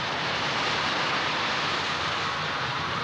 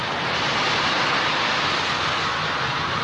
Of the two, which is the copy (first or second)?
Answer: first